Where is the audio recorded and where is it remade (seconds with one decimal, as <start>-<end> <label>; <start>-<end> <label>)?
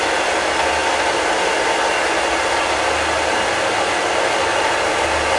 0.0-5.4 recorded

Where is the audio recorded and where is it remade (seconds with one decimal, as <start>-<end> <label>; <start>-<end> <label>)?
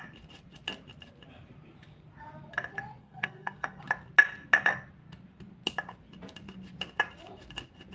0.0-3.0 recorded; 3.0-3.8 remade; 3.8-7.9 recorded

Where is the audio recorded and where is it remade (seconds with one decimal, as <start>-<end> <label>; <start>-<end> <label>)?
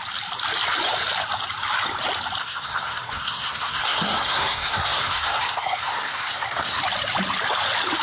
0.0-2.4 recorded; 2.4-6.8 remade; 6.8-8.0 recorded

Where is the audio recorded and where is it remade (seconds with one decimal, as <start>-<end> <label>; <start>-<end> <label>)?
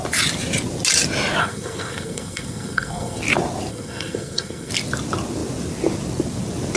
0.0-1.4 recorded; 1.4-3.2 remade; 3.2-3.7 recorded; 3.7-4.7 remade; 4.7-6.8 recorded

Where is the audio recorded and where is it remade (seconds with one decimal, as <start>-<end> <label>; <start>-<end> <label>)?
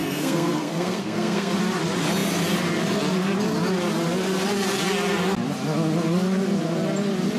0.0-1.5 remade; 1.5-7.4 recorded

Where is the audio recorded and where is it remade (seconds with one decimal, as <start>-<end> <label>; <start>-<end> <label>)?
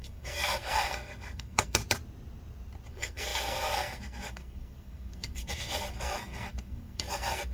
0.0-1.8 remade; 1.8-2.9 recorded; 2.9-7.5 remade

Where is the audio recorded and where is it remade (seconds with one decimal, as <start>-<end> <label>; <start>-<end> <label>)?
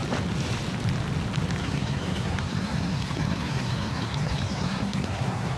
0.0-1.6 recorded; 1.6-5.6 remade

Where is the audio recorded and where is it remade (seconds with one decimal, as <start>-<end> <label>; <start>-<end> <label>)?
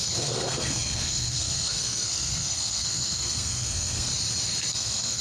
0.0-4.1 remade; 4.1-4.7 recorded; 4.7-5.2 remade